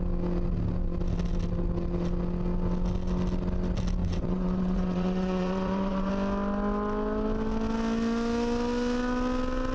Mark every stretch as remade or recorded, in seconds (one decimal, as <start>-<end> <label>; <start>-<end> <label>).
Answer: 0.0-4.0 recorded; 4.0-6.1 remade; 6.1-9.7 recorded